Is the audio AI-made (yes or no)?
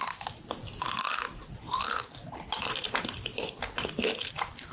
no